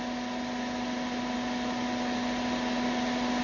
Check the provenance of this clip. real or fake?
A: real